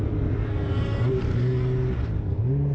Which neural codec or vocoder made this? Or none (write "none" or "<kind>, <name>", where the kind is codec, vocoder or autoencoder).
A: none